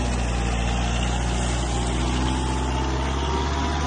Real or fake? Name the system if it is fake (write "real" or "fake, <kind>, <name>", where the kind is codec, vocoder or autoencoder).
real